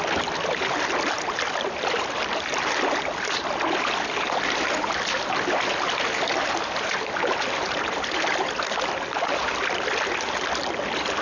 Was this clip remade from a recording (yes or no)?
no